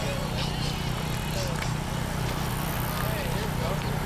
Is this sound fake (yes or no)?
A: no